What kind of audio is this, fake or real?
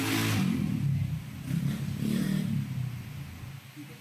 real